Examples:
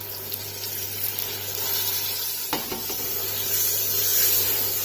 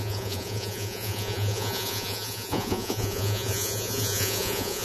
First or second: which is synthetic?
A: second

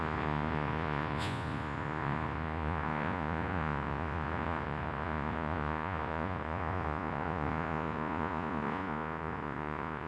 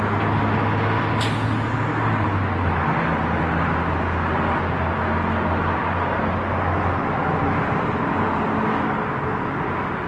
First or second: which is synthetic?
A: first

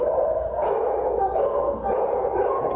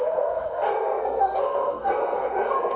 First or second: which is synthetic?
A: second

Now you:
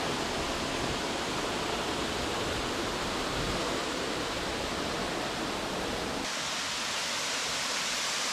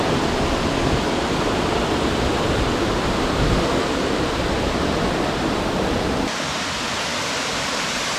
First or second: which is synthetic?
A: second